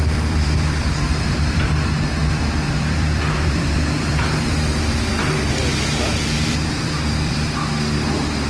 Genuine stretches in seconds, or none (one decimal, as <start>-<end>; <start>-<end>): none